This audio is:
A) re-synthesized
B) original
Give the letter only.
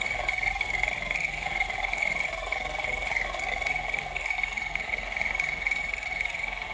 A